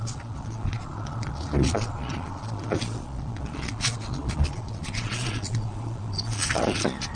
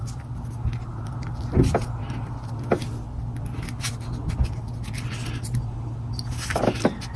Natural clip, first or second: second